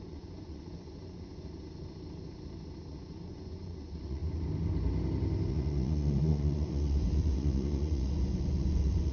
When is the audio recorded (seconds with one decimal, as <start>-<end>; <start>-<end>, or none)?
1.5-2.9; 4.2-5.5